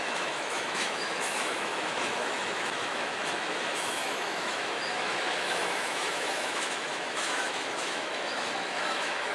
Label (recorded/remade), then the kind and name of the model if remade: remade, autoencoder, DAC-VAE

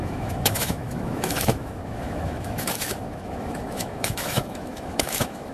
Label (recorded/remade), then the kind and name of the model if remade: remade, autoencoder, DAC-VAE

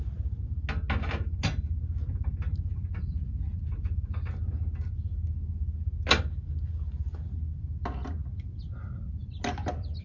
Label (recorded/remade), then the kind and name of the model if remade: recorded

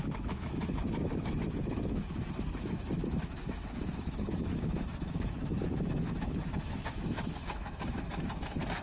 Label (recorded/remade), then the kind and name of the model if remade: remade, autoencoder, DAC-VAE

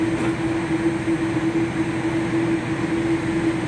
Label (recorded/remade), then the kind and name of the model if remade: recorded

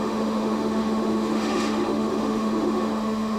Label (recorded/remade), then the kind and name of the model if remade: remade, autoencoder, DAC-VAE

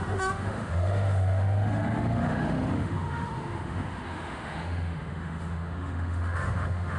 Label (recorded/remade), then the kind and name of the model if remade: remade, autoencoder, DAC-VAE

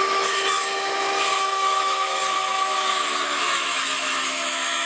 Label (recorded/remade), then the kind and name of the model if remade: remade, autoencoder, DAC-VAE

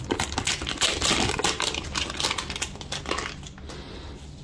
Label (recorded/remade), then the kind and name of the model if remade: recorded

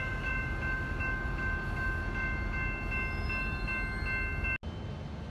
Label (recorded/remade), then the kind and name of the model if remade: recorded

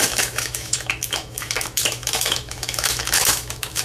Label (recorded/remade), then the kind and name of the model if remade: remade, autoencoder, DAC-VAE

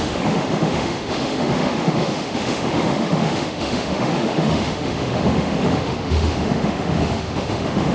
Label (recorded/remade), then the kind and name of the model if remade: remade, autoencoder, DAC-VAE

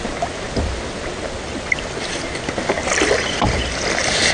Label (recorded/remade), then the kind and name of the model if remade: recorded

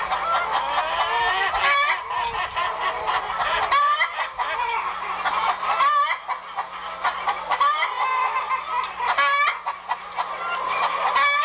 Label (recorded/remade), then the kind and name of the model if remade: recorded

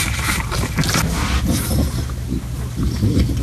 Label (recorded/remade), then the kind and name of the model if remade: recorded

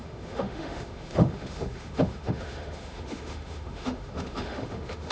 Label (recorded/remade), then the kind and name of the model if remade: remade, autoencoder, DAC-VAE